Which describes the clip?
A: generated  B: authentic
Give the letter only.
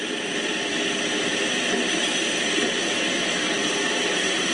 A